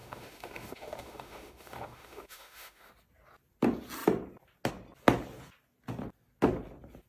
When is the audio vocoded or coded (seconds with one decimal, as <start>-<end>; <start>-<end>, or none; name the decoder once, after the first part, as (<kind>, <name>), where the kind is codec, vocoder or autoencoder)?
0.0-2.9 (autoencoder, DAC-VAE)